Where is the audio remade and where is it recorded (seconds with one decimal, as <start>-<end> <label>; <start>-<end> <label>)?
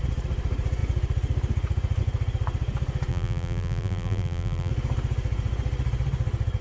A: 0.0-3.1 recorded; 3.1-4.7 remade; 4.7-6.6 recorded